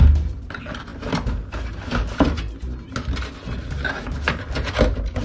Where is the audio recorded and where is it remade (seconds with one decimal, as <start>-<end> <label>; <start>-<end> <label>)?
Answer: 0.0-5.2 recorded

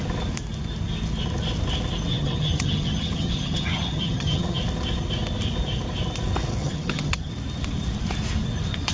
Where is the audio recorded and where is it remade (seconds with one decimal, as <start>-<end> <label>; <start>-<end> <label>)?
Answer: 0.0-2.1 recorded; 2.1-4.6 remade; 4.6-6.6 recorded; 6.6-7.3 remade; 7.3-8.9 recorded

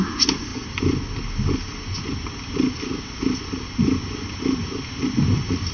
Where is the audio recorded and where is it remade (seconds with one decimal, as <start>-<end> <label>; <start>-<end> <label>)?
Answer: 0.0-5.7 recorded

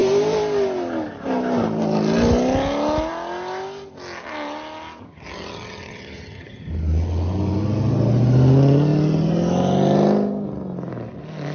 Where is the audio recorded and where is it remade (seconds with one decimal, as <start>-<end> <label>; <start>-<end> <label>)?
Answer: 0.0-5.0 recorded; 5.0-6.7 remade; 6.7-11.5 recorded

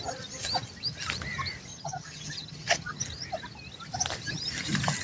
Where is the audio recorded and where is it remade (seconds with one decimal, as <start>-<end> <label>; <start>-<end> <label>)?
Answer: 0.0-1.7 recorded; 1.7-3.0 remade; 3.0-5.0 recorded

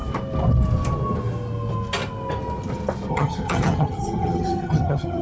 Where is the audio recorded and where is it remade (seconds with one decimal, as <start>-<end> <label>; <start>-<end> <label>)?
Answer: 0.0-3.1 recorded; 3.1-5.2 remade

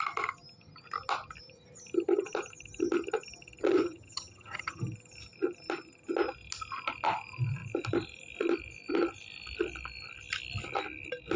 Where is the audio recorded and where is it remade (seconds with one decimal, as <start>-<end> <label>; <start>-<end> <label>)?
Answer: 0.0-3.7 recorded; 3.7-4.8 remade; 4.8-11.4 recorded

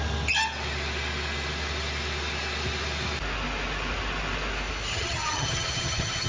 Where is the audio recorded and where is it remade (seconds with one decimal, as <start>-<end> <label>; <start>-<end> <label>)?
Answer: 0.0-4.9 recorded; 4.9-6.3 remade